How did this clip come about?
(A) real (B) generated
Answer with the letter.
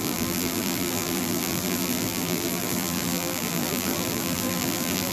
B